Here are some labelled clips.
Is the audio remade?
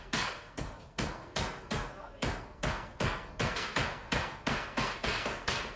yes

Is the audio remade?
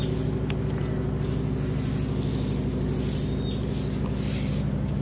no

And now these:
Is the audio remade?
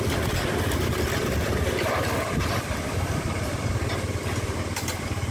no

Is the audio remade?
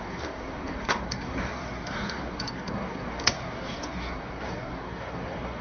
yes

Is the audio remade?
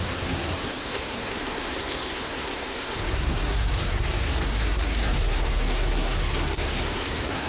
yes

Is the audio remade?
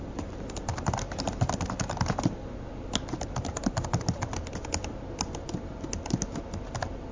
no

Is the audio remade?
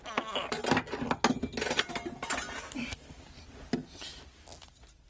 no